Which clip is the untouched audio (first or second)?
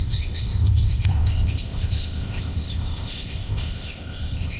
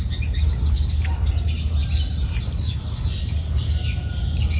second